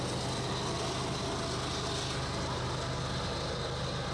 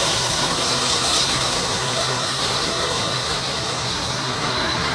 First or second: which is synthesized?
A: second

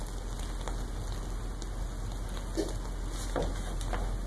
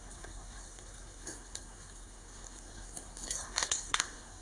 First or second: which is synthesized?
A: second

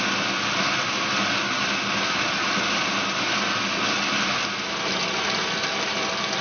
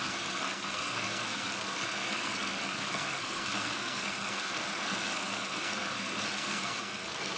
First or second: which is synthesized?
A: second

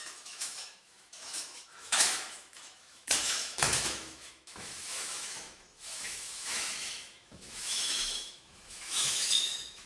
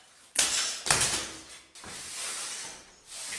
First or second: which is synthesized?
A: first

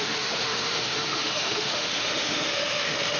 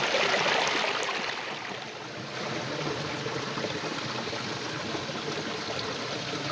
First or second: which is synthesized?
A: first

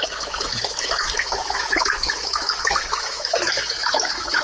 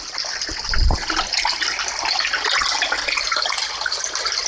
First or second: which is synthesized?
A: first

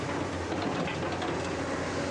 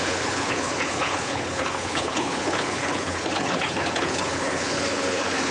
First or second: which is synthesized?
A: second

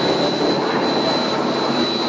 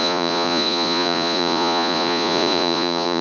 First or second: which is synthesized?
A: second